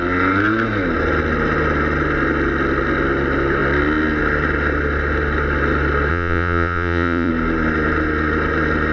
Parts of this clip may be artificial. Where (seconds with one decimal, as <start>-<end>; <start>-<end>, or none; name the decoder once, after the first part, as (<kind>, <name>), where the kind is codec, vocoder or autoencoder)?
6.1-7.3 (vocoder, Vocos)